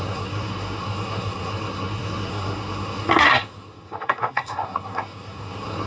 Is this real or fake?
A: fake